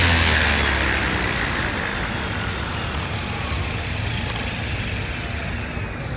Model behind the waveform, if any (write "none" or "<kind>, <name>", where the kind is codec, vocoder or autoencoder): none